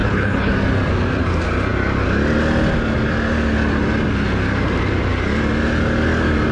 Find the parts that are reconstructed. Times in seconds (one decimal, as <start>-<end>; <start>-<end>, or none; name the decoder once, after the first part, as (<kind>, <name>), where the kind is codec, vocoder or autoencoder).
0.0-0.5 (codec, HILCodec)